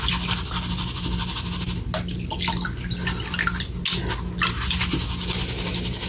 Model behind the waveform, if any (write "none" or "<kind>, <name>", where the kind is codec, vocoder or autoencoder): none